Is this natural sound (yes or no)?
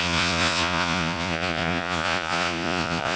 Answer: no